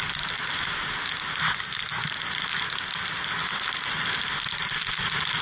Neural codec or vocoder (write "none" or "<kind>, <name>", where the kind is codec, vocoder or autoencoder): none